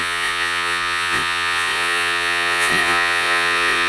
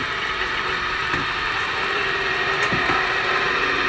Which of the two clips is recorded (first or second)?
second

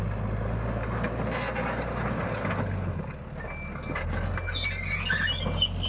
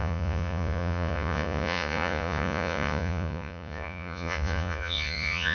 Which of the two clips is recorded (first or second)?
first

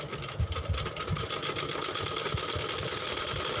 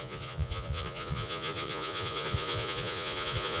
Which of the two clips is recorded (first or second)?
first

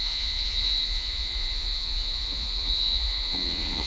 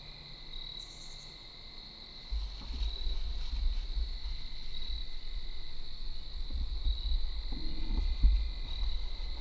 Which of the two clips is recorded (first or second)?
second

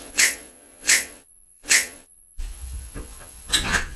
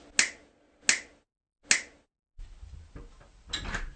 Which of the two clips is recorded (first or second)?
second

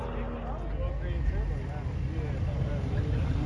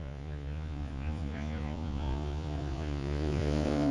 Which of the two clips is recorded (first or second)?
first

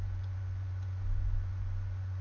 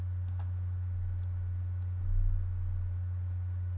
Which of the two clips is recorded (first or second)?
second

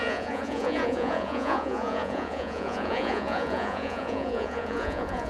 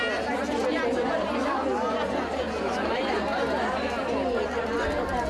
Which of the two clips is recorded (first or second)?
second